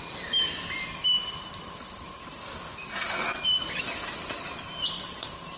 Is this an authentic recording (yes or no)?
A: yes